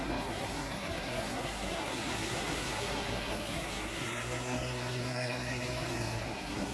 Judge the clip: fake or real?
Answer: fake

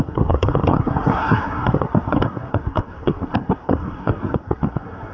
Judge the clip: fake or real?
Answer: fake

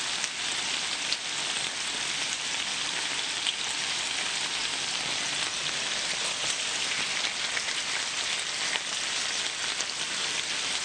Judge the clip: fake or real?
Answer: real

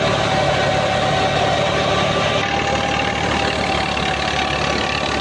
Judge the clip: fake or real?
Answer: real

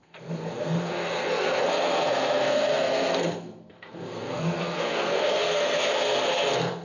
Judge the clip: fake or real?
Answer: fake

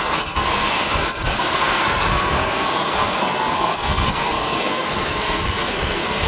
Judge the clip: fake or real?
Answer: fake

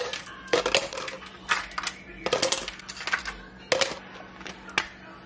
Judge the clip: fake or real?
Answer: real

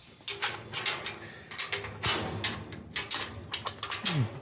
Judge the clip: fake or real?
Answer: real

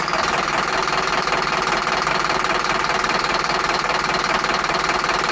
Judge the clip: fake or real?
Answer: real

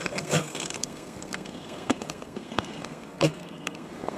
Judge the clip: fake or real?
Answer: fake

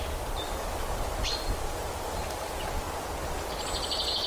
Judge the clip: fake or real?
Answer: real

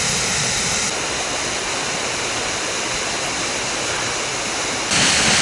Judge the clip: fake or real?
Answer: real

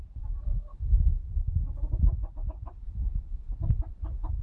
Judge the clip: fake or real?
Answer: real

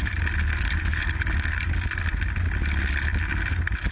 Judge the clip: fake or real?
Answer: real